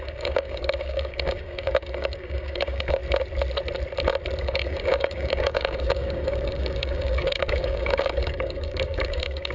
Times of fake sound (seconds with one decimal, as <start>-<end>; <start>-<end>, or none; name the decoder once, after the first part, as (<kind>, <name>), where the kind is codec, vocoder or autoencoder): 0.0-3.0 (codec, DAC); 4.4-9.5